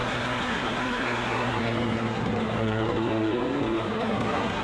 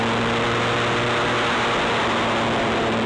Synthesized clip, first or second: first